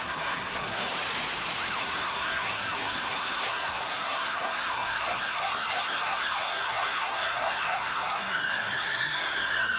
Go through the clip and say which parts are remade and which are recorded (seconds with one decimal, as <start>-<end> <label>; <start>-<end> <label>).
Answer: 0.0-0.9 remade; 0.9-1.8 recorded; 1.8-9.8 remade